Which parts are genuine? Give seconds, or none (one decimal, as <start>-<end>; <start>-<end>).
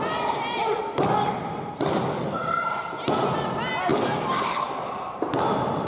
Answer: 0.6-1.7; 2.4-3.1